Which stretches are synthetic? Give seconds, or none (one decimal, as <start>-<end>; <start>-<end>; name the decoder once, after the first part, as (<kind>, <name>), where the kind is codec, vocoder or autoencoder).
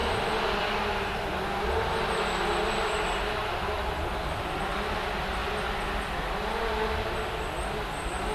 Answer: none